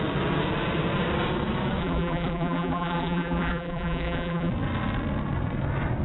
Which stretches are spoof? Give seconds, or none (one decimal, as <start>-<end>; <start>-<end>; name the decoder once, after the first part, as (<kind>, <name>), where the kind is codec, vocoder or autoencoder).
1.8-4.5 (vocoder, BigVGAN v2)